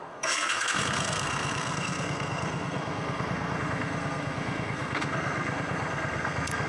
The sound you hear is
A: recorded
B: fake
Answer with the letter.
B